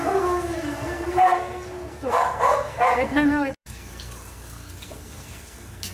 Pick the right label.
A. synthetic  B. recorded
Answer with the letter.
A